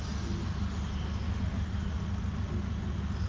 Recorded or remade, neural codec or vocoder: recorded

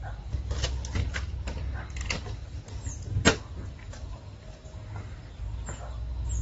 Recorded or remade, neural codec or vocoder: recorded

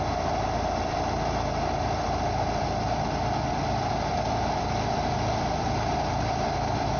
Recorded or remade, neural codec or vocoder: remade, vocoder, BigVGAN v2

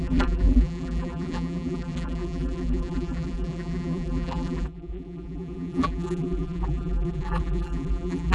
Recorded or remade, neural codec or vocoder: remade, vocoder, BigVGAN v2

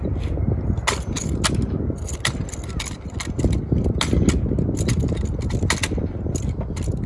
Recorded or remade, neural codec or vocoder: recorded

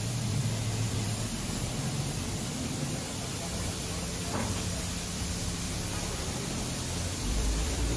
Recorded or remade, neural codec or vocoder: remade, vocoder, BigVGAN v2